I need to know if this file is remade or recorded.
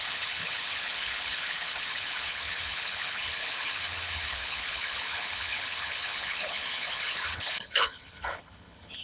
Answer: remade